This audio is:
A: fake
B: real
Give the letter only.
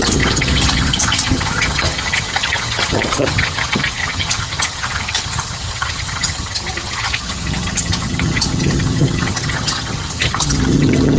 A